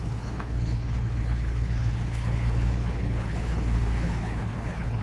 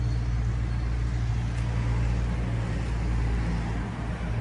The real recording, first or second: second